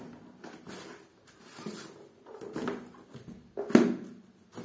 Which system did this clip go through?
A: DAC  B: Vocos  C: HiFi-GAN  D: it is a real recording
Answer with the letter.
D